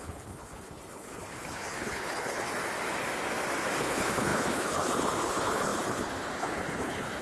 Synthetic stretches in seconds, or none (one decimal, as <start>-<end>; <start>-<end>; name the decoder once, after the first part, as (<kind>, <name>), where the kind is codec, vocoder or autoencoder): 0.0-2.5 (codec, HILCodec); 3.8-7.2

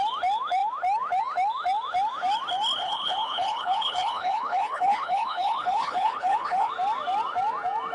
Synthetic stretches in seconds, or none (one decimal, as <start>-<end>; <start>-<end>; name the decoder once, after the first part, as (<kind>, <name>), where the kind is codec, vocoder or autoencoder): 2.8-6.7 (codec, HILCodec)